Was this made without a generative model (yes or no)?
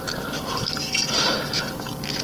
yes